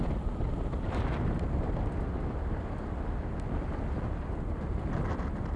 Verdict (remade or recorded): recorded